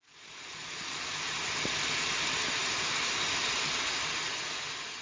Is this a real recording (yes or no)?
yes